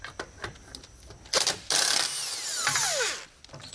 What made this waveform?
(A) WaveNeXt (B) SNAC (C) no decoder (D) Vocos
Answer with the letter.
C